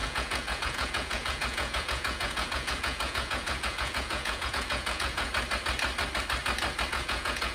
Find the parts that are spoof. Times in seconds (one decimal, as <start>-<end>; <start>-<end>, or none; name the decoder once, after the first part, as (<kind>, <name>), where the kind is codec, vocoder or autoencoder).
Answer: 0.0-5.3 (vocoder, Vocos); 6.9-7.5